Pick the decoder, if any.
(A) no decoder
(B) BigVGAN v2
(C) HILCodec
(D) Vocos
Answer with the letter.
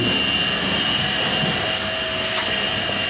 A